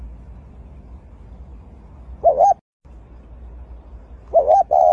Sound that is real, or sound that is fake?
real